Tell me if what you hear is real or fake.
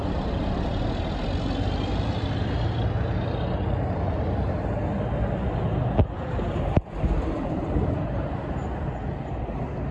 real